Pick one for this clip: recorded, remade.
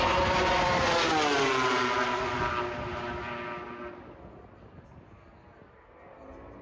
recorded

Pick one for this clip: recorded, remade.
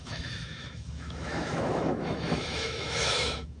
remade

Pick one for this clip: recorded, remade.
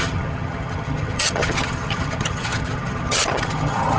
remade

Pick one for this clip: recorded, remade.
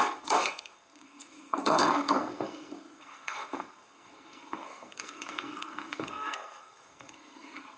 remade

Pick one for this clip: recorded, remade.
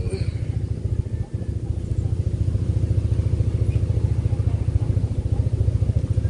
recorded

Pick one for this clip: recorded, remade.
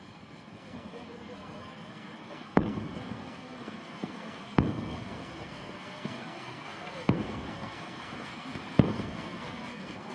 remade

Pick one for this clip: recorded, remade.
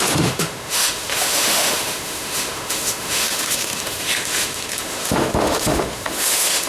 remade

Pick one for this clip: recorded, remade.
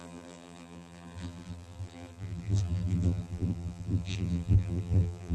remade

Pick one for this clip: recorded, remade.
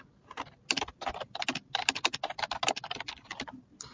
recorded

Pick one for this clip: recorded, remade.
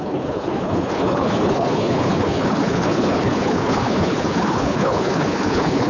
remade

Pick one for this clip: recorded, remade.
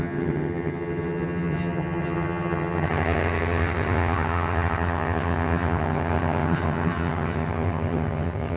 remade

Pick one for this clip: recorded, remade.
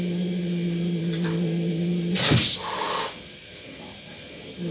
recorded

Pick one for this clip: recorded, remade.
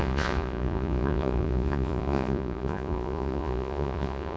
remade